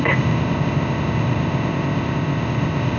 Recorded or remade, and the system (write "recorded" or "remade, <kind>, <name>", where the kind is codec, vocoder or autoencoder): remade, codec, ZipCodec